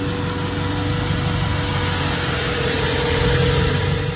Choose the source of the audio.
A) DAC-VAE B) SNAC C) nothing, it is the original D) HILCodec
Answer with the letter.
C